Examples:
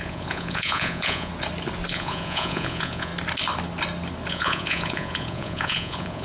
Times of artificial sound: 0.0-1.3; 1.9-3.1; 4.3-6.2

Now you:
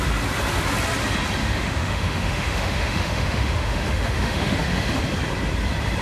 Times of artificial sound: 1.4-5.0

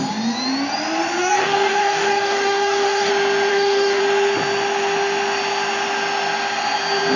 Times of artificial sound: 1.2-3.1; 3.5-4.0